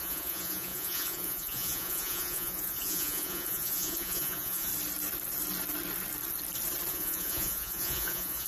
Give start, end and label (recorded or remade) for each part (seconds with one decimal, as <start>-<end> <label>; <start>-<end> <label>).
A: 0.0-4.7 remade; 4.7-6.9 recorded; 6.9-8.5 remade